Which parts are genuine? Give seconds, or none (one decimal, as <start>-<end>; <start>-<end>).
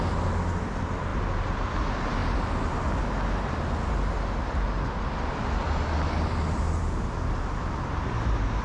0.0-8.6